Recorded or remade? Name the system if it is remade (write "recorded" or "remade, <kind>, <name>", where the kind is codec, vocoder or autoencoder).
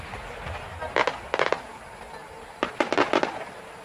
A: recorded